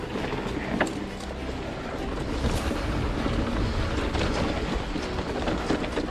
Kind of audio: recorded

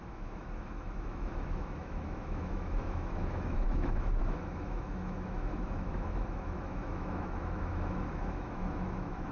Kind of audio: remade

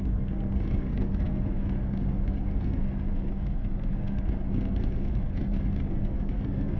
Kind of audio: remade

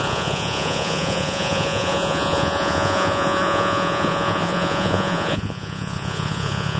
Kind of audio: remade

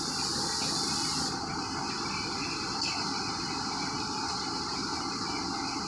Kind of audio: recorded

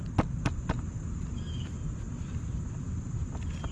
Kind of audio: remade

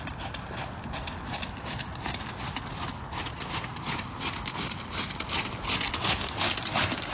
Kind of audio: recorded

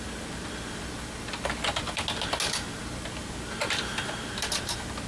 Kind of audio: recorded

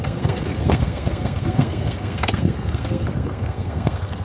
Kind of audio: remade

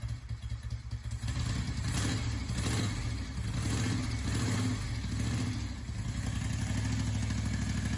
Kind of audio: recorded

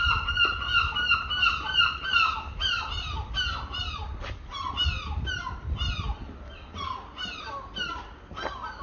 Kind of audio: recorded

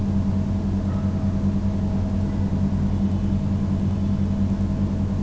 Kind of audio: recorded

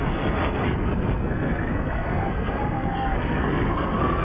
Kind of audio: remade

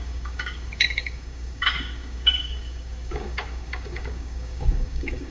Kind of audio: remade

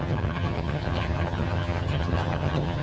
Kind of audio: remade